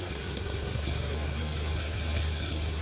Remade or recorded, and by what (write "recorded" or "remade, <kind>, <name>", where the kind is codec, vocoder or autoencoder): remade, codec, SNAC